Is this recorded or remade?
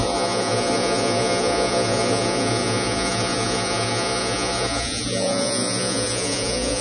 remade